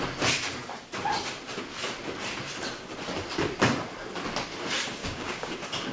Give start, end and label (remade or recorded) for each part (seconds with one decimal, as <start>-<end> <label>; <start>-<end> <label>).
0.0-5.0 recorded; 5.0-5.5 remade; 5.5-5.9 recorded